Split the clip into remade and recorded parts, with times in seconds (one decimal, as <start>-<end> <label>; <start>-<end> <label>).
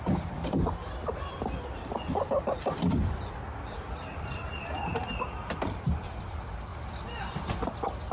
0.0-4.9 remade; 4.9-5.5 recorded; 5.5-6.7 remade; 6.7-7.3 recorded; 7.3-8.1 remade